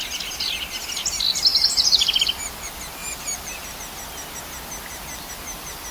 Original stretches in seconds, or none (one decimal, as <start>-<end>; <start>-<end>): 0.0-1.5; 2.2-3.0; 3.8-5.9